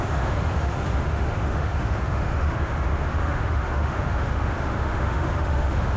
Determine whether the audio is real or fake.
fake